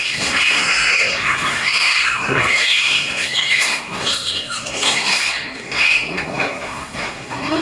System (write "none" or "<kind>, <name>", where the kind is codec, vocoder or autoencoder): codec, SNAC